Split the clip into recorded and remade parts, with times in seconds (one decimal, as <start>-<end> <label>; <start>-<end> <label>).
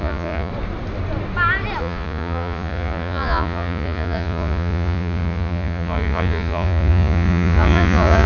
0.0-0.5 remade; 0.5-1.8 recorded; 1.8-8.3 remade